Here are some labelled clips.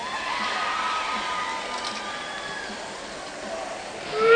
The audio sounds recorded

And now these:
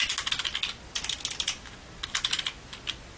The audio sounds recorded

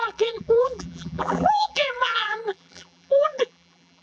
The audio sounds remade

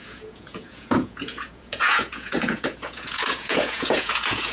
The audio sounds remade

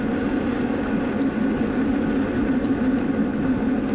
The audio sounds recorded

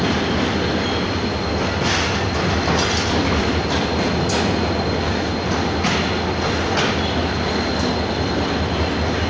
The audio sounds recorded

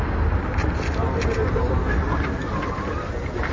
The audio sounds recorded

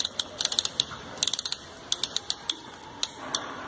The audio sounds recorded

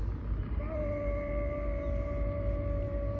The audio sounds recorded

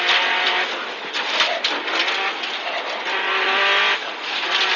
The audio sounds recorded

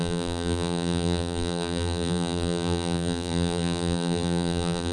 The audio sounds remade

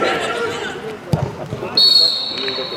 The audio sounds recorded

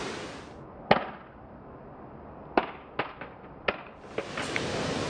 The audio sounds recorded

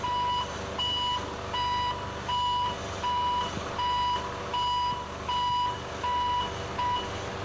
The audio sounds recorded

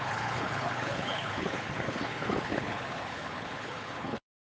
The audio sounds remade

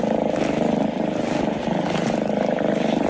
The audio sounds recorded